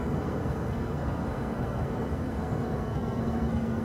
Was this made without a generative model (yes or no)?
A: no